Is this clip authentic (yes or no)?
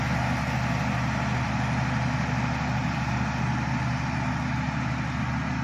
yes